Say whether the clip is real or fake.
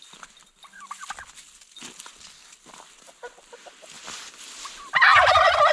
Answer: real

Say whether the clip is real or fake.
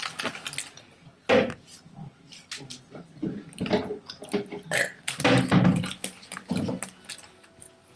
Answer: real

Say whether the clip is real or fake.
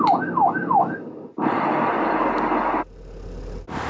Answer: real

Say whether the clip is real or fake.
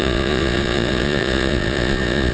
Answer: fake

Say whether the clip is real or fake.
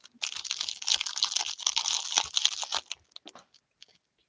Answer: real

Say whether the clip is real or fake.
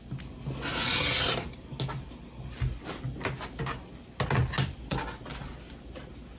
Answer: real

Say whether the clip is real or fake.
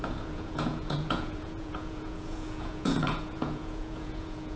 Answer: fake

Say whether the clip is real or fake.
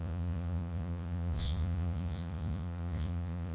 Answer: fake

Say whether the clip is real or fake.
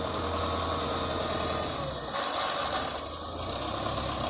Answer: real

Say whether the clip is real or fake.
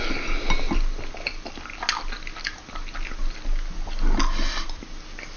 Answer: real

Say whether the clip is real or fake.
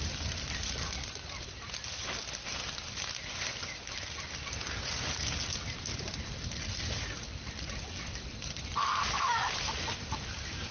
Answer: real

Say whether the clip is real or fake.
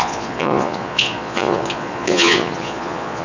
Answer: fake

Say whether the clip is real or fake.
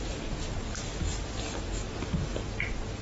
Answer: real